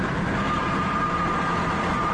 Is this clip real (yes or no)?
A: yes